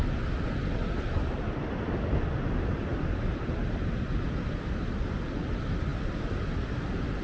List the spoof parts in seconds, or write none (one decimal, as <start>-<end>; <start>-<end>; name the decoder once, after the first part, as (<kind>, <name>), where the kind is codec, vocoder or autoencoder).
none